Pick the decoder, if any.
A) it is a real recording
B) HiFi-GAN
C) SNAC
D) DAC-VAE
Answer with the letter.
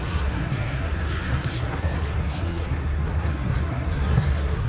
C